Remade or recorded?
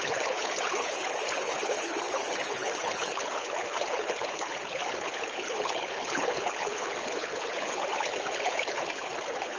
remade